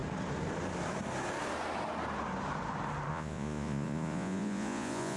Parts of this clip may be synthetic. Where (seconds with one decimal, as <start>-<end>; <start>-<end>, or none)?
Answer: 3.1-5.2